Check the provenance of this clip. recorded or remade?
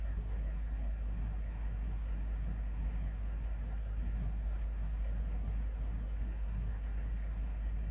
remade